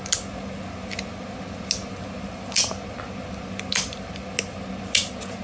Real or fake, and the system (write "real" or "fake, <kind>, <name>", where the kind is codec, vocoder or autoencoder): real